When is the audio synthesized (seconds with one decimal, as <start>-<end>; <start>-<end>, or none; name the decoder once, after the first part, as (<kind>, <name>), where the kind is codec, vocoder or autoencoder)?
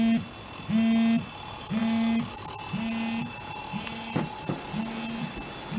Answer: none